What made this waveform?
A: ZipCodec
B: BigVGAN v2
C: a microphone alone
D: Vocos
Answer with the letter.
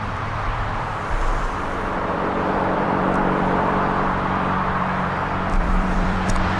B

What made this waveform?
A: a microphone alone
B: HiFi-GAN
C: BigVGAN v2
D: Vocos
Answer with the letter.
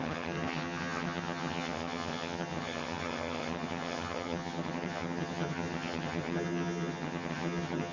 B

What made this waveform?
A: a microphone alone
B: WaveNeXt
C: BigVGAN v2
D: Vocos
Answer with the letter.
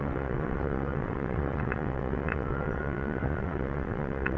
B